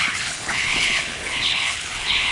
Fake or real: fake